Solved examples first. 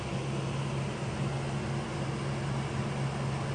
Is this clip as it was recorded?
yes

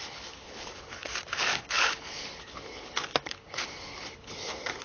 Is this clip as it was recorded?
no